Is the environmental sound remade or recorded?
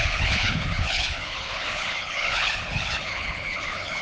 remade